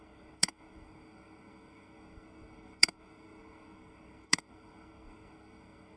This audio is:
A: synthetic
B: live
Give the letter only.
A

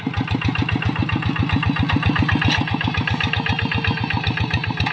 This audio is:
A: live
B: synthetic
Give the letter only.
A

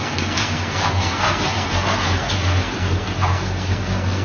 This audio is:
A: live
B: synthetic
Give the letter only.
B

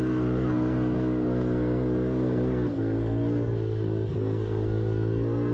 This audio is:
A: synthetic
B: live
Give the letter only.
A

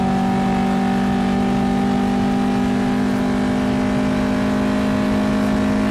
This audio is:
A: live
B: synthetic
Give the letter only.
A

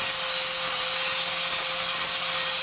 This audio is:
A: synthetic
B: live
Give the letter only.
B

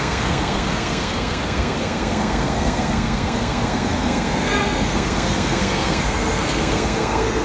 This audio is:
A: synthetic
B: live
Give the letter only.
A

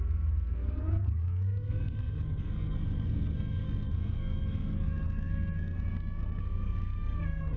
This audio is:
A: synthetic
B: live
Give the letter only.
A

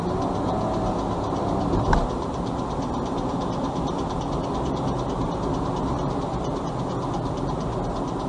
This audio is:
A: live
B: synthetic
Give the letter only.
A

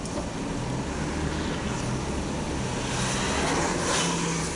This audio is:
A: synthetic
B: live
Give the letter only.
B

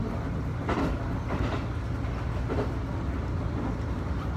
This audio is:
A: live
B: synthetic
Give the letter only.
A